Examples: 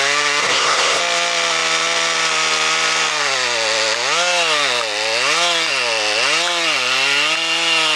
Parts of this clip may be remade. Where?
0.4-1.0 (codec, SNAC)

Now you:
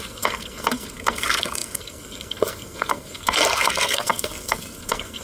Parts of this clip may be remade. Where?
0.0-5.2 (codec, SNAC)

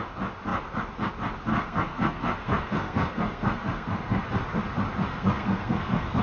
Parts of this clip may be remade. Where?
1.5-4.2 (codec, SNAC); 5.1-6.2

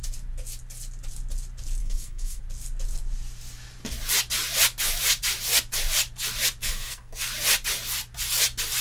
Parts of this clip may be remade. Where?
1.8-2.4 (codec, SNAC); 6.6-7.3

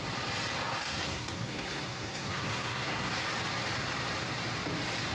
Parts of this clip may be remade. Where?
0.8-3.1 (codec, SNAC)

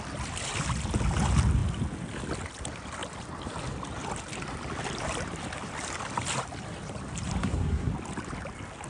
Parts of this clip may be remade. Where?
7.4-7.9 (codec, SNAC)